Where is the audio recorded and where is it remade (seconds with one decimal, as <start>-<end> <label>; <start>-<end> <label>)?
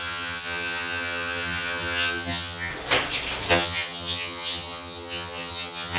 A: 0.0-2.7 remade; 2.7-3.5 recorded; 3.5-6.0 remade